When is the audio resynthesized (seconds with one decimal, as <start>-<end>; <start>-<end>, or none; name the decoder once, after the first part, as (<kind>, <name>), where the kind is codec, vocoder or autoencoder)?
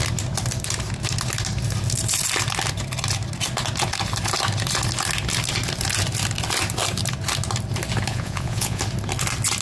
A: 8.1-8.8 (vocoder, Vocos)